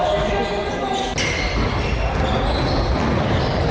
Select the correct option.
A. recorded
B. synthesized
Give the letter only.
A